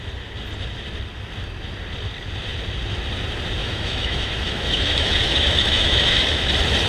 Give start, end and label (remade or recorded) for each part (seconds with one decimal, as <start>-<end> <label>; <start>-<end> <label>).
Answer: 0.0-3.6 recorded; 3.6-6.5 remade; 6.5-6.9 recorded